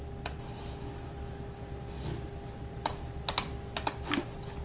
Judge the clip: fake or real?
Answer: real